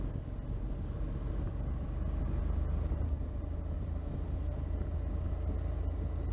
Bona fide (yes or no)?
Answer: yes